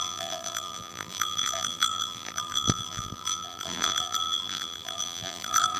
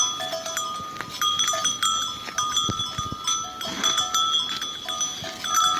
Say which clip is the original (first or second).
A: second